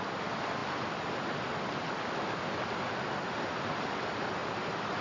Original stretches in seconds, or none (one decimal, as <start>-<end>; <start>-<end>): 0.0-4.4